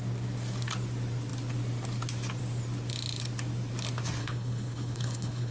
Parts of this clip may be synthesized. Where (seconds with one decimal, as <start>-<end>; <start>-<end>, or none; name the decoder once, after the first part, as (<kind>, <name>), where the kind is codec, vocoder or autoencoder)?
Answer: 4.2-5.5 (codec, HILCodec)